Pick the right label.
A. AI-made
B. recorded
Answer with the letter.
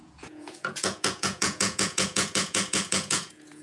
A